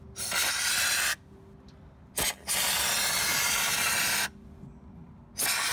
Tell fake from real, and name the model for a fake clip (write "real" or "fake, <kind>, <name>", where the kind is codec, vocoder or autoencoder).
real